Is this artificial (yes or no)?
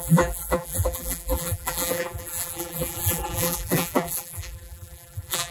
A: yes